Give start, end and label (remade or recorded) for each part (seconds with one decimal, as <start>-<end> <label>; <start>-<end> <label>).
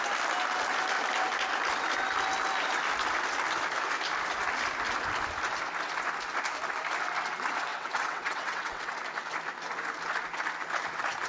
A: 0.0-7.7 recorded; 7.7-8.9 remade; 8.9-11.3 recorded